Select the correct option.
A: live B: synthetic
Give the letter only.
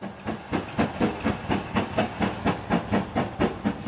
A